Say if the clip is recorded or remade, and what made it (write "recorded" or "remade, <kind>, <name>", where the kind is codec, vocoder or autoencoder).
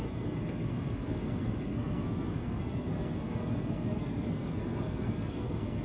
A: remade, codec, SNAC